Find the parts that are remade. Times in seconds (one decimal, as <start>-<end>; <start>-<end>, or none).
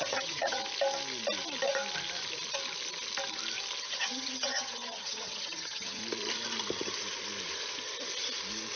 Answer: 0.0-0.6; 3.8-6.0